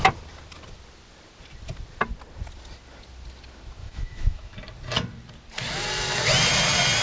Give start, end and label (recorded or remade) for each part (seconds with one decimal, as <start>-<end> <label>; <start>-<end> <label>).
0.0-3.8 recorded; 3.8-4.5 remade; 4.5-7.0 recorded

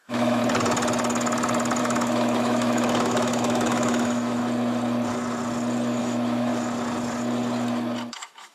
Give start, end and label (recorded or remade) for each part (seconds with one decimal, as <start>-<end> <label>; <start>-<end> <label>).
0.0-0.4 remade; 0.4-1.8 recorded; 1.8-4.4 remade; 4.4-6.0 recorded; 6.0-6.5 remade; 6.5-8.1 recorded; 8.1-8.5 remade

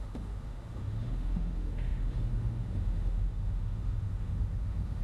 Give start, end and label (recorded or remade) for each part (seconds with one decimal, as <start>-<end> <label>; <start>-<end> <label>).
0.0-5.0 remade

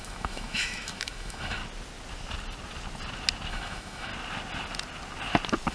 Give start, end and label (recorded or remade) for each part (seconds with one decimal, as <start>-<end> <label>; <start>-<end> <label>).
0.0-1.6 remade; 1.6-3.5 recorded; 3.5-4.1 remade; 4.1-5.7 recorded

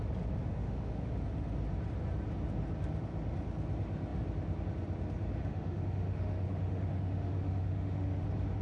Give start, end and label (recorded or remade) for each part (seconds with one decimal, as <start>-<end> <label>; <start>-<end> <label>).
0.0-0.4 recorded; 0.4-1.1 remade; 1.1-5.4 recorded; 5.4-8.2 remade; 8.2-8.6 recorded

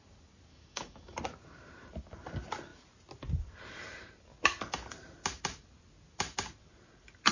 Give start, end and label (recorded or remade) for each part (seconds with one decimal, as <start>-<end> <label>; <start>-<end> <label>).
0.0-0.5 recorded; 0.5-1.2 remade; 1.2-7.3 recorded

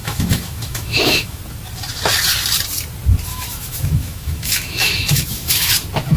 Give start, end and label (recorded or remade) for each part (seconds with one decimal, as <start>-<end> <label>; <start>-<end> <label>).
0.0-1.4 remade; 1.4-3.3 recorded; 3.3-5.7 remade; 5.7-6.2 recorded